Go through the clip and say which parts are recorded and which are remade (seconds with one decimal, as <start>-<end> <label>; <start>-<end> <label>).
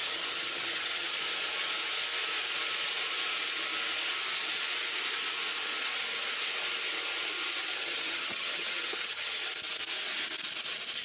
0.0-1.2 remade; 1.2-7.7 recorded; 7.7-9.4 remade; 9.4-11.0 recorded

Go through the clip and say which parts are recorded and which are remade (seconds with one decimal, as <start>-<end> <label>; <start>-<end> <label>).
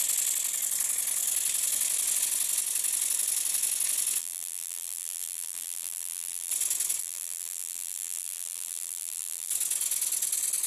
0.0-4.2 recorded; 4.2-6.5 remade; 6.5-7.0 recorded; 7.0-9.5 remade; 9.5-10.7 recorded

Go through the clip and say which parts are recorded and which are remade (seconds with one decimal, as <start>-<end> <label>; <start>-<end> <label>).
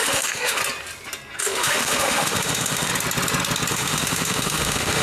0.0-0.6 remade; 0.6-1.4 recorded; 1.4-2.9 remade; 2.9-3.7 recorded; 3.7-5.0 remade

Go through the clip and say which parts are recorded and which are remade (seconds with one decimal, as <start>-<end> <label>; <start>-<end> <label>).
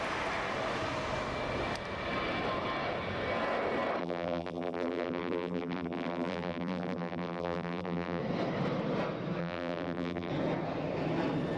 0.0-4.0 recorded; 4.0-8.2 remade; 8.2-9.4 recorded; 9.4-10.3 remade; 10.3-11.6 recorded